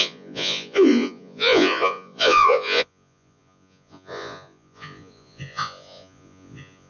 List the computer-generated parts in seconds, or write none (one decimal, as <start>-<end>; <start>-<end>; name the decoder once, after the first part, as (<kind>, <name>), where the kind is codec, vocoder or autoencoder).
0.0-6.9 (vocoder, Vocos)